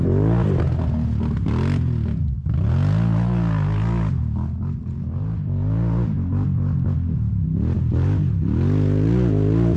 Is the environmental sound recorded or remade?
recorded